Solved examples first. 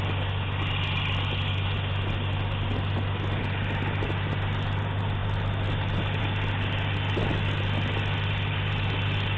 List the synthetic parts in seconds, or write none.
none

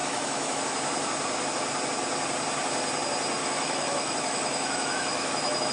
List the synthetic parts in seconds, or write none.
0.0-0.6 (autoencoder, DAC-VAE); 3.4-5.7

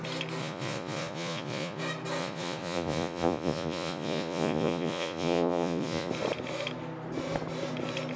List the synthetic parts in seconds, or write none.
0.4-1.8 (vocoder, Vocos); 2.2-6.1

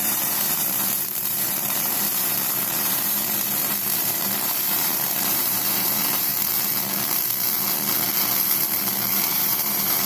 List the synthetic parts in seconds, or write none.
0.0-6.3 (vocoder, BigVGAN v2); 9.3-10.1